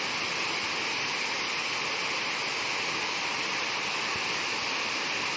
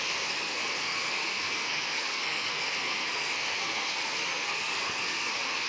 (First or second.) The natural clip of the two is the first